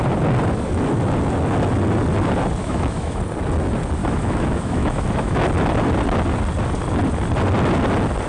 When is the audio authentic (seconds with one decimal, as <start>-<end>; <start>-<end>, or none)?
0.0-2.6; 3.2-4.0; 5.4-8.3

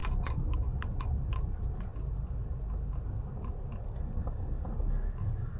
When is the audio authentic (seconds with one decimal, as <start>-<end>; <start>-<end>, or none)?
0.0-5.6

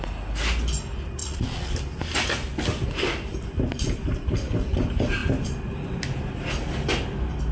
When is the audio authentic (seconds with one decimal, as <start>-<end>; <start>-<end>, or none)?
0.0-1.2; 1.7-7.5

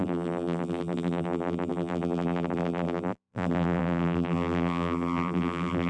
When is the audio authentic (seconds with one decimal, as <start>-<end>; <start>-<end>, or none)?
none

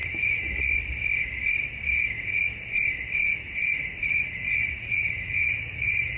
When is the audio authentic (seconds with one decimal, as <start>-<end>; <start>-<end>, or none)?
0.7-3.8

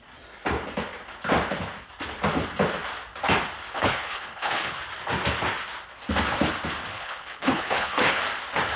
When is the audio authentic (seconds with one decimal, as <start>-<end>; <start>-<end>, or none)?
0.0-3.7; 4.8-6.9; 8.2-8.8